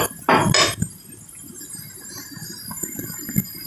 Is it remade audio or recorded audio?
recorded